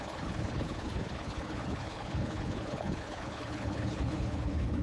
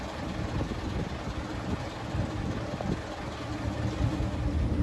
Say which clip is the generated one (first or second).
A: first